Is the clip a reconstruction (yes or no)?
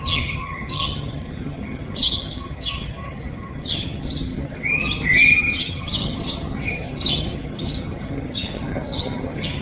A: yes